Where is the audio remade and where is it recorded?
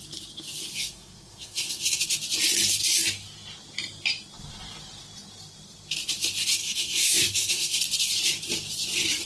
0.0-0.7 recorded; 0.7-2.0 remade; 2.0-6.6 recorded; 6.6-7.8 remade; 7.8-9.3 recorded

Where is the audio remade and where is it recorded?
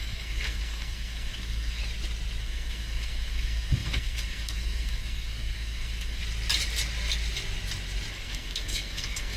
0.0-1.8 remade; 1.8-2.4 recorded; 2.4-6.2 remade; 6.2-8.1 recorded; 8.1-9.4 remade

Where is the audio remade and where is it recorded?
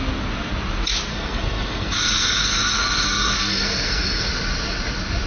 0.0-1.1 recorded; 1.1-4.3 remade; 4.3-5.3 recorded